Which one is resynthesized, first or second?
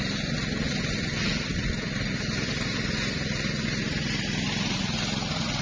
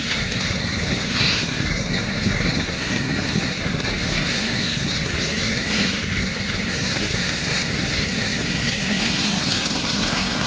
second